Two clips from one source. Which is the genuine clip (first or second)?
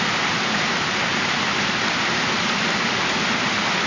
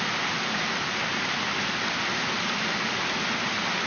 second